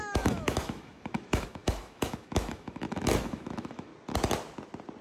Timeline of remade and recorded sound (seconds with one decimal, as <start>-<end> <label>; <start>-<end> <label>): 0.0-3.9 remade; 3.9-5.0 recorded